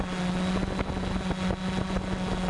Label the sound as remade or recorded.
recorded